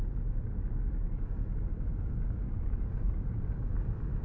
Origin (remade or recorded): recorded